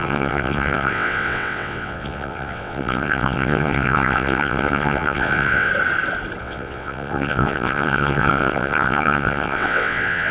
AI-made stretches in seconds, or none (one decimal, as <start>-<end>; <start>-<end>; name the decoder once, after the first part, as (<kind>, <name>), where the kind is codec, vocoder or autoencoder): 0.0-5.7 (vocoder, WaveNeXt); 6.4-10.3

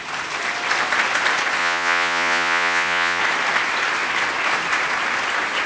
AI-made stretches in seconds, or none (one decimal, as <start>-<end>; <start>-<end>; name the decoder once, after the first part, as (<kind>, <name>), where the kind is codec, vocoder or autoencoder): 1.6-3.2 (vocoder, Vocos)

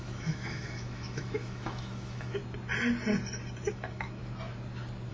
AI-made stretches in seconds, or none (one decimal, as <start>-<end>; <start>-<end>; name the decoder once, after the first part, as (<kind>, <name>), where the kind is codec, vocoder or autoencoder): 0.0-2.4 (autoencoder, DAC-VAE); 3.7-4.2

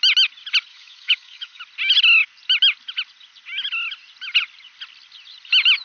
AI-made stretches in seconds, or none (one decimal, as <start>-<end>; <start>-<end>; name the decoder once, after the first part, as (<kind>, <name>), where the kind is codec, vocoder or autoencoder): 0.7-1.6 (autoencoder, DAC-VAE)

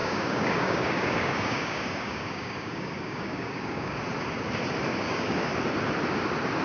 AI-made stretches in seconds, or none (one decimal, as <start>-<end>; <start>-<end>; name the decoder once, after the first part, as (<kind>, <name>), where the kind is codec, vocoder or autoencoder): 0.0-4.0 (codec, DAC); 4.9-5.5